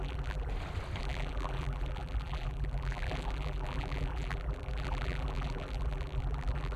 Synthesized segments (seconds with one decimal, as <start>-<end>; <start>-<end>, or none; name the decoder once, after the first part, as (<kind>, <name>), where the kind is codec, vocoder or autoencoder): 0.0-0.5 (vocoder, BigVGAN v2); 1.0-6.8